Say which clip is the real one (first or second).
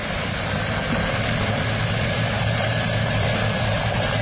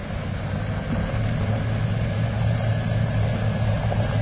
second